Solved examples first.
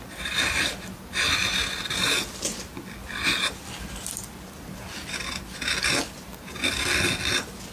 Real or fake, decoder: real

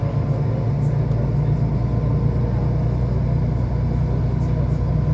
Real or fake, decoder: real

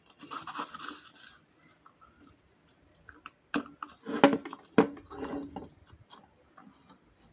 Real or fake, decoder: real